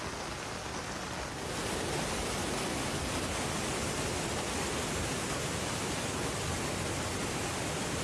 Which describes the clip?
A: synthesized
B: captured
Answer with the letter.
B